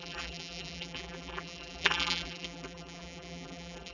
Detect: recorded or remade remade